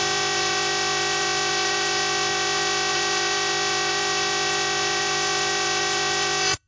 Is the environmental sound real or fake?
fake